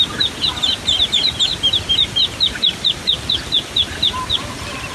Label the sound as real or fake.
real